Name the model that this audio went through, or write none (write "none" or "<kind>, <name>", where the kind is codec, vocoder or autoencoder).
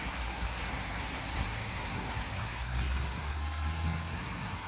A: codec, SNAC